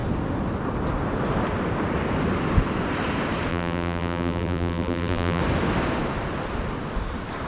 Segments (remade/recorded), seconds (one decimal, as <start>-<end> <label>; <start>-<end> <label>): 0.0-3.5 recorded; 3.5-5.4 remade; 5.4-7.5 recorded